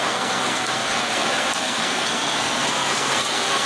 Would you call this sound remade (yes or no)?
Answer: yes